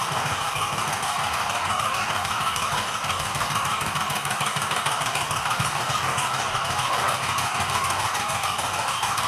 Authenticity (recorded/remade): remade